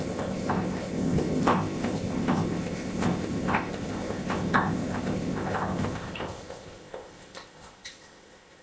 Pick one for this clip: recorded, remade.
remade